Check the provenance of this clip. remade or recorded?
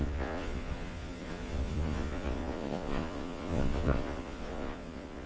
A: remade